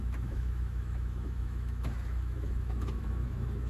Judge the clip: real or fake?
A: fake